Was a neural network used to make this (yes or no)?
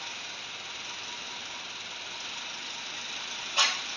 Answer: no